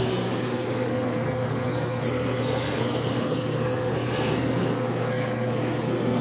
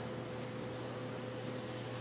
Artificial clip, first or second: first